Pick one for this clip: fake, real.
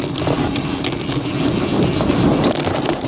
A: real